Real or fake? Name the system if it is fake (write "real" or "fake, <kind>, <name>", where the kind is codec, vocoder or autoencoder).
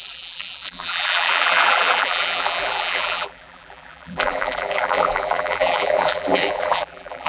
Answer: fake, vocoder, BigVGAN v2